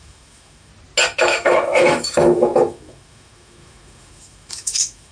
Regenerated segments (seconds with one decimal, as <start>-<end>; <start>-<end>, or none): 0.0-0.7; 1.2-5.1